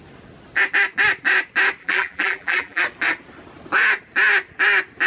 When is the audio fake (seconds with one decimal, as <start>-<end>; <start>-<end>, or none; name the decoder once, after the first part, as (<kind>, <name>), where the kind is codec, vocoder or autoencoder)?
1.8-2.8 (vocoder, BigVGAN v2)